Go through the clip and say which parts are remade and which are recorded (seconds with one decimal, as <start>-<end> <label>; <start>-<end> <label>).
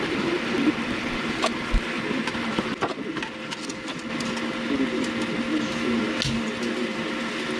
0.0-7.6 recorded